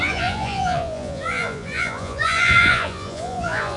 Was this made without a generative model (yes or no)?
no